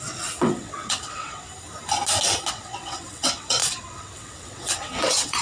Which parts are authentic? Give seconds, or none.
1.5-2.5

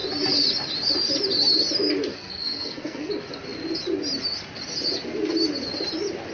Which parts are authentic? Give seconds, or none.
0.0-2.1; 3.1-6.3